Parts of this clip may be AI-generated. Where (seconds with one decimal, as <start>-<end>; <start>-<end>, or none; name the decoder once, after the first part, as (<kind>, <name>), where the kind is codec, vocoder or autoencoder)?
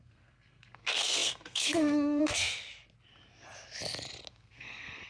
0.0-2.6 (codec, SNAC); 4.3-5.1